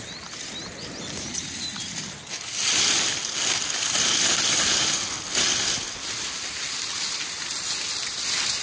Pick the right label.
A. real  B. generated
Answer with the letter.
A